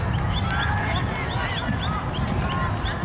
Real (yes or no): yes